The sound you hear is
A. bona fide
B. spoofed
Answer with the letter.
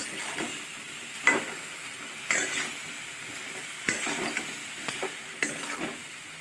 A